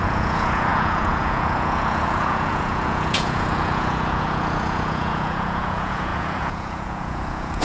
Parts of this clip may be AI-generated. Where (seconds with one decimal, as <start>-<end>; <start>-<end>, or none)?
0.0-7.6